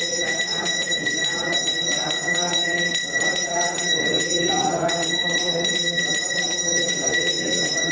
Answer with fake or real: fake